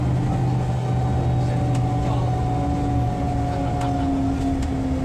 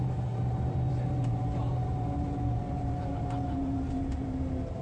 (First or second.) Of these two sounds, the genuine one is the first